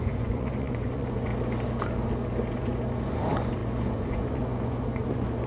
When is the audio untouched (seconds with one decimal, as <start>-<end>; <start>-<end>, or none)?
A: 1.3-2.5